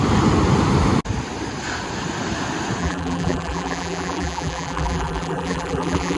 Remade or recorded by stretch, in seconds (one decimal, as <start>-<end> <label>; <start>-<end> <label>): 0.0-2.8 recorded; 2.8-6.2 remade

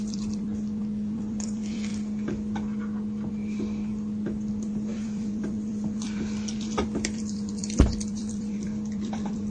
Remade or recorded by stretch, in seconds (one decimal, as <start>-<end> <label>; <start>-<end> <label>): 0.0-1.9 remade; 1.9-3.3 recorded; 3.3-3.9 remade; 3.9-4.5 recorded; 4.5-9.5 remade

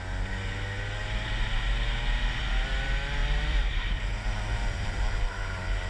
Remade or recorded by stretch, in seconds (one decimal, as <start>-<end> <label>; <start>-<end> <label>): 0.0-3.2 recorded; 3.2-5.3 remade; 5.3-5.9 recorded

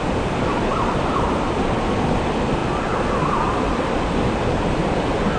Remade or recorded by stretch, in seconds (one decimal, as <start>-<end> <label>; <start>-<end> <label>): 0.0-5.4 remade